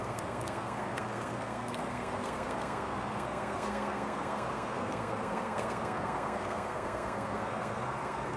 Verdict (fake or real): fake